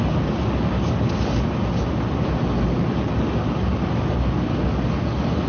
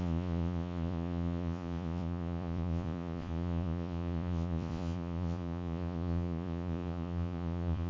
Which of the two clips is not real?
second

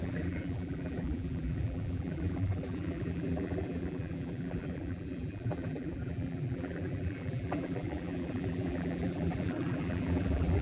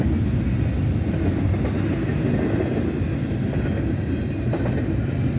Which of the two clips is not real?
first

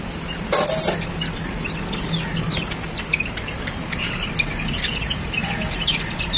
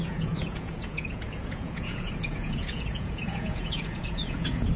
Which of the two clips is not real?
second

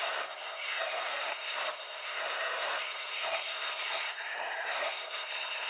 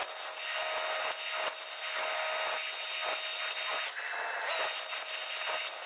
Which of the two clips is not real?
first